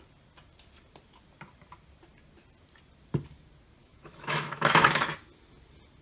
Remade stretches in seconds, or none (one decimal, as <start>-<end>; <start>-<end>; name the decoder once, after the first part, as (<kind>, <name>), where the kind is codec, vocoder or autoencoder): 3.8-5.1 (autoencoder, DAC-VAE)